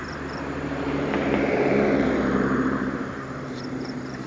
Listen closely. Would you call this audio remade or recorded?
remade